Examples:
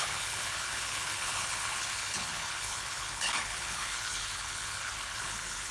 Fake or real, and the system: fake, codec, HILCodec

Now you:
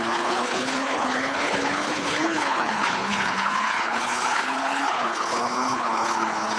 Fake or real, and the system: fake, codec, HILCodec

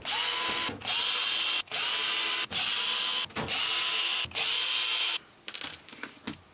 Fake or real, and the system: real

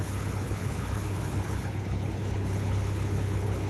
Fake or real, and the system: fake, codec, HILCodec